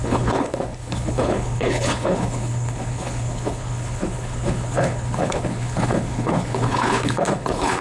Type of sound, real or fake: fake